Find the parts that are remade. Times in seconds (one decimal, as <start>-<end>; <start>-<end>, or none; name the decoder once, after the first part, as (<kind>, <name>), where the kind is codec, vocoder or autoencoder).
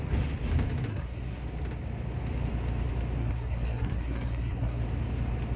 0.9-1.4 (codec, SNAC); 3.2-4.8